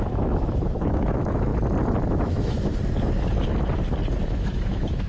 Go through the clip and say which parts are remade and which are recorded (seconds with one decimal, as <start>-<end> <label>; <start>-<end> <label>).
0.0-1.5 remade; 1.5-2.1 recorded; 2.1-2.7 remade; 2.7-4.2 recorded; 4.2-5.1 remade